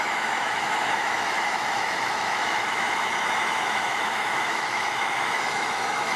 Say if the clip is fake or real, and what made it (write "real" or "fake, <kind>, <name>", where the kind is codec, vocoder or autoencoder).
fake, autoencoder, DAC-VAE